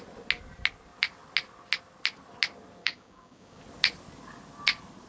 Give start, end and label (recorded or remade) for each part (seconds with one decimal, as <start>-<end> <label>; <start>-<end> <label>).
0.0-2.8 recorded; 2.8-3.6 remade; 3.6-5.1 recorded